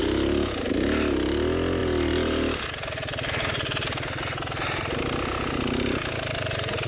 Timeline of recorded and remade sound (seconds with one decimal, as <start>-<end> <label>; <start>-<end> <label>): 0.0-6.9 recorded